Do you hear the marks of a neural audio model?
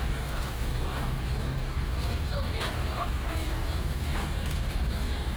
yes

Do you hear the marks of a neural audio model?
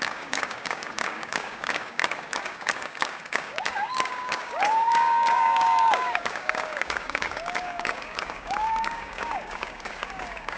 yes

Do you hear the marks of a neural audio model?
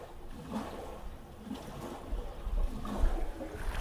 no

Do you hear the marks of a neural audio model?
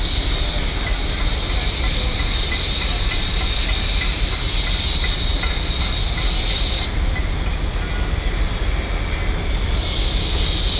no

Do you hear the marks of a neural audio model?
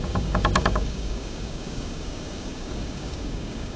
yes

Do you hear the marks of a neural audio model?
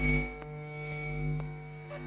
yes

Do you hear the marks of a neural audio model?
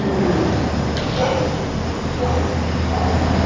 no